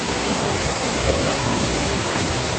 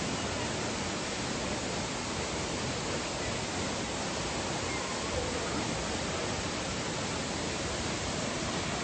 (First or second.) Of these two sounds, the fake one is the first